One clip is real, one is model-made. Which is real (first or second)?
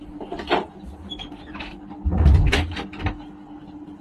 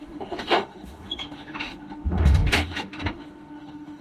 first